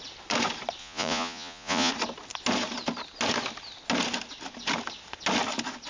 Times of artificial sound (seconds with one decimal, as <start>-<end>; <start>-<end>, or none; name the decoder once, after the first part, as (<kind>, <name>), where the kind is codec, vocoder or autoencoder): 0.8-1.9 (vocoder, Vocos)